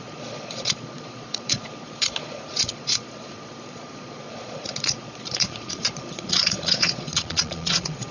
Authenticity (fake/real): fake